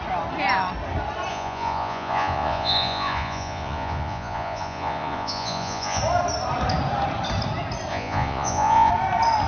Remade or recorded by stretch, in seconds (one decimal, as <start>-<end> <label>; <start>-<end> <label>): 0.0-1.3 recorded; 1.3-6.0 remade; 6.0-7.9 recorded; 7.9-8.9 remade; 8.9-9.5 recorded